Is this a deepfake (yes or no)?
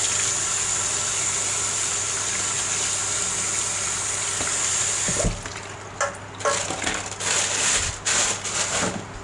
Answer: no